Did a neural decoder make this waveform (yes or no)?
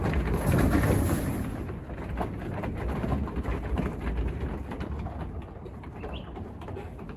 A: no